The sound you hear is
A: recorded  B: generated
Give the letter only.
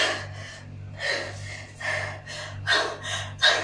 A